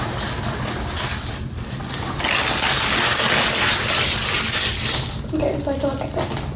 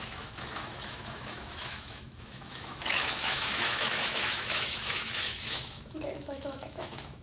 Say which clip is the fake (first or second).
second